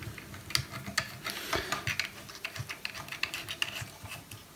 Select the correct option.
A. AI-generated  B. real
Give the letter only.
B